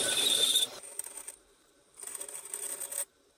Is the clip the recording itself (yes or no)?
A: no